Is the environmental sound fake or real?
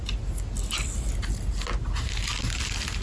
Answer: real